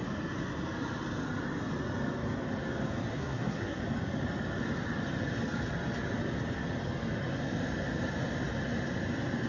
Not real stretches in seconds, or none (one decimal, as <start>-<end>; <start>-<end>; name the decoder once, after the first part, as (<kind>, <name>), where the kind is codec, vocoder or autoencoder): 3.1-3.8 (codec, SNAC)